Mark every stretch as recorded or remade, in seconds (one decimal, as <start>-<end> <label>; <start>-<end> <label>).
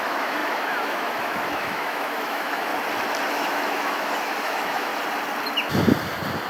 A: 0.0-2.7 remade; 2.7-3.3 recorded; 3.3-4.9 remade; 4.9-6.5 recorded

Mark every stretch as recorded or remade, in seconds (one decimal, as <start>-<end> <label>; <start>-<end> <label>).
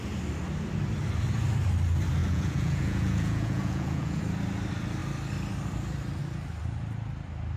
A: 0.0-2.2 recorded; 2.2-4.2 remade; 4.2-7.6 recorded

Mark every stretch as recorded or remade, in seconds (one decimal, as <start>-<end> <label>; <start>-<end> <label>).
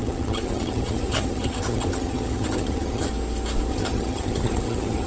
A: 0.0-3.1 remade; 3.1-3.7 recorded; 3.7-5.1 remade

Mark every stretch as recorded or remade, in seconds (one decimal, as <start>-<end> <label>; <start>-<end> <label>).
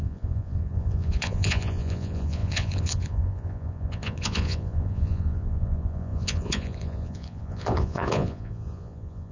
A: 0.0-9.3 remade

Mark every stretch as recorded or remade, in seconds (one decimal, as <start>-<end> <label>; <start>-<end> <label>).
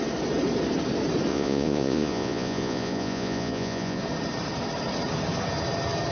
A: 0.0-1.3 recorded; 1.3-4.0 remade; 4.0-6.1 recorded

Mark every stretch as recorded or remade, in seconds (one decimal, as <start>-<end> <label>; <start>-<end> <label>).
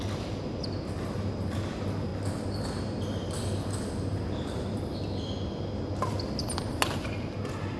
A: 0.0-7.8 recorded